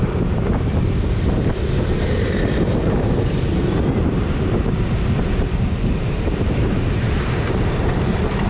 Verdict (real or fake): fake